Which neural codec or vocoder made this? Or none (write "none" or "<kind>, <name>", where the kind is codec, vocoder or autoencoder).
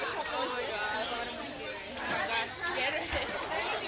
none